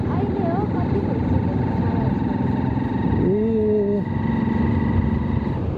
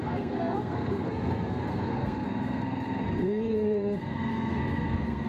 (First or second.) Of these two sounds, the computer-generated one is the second